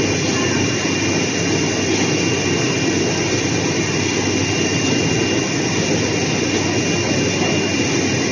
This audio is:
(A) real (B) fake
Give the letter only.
A